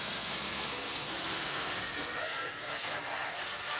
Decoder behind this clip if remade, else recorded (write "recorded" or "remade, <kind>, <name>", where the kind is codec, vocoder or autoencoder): remade, codec, SNAC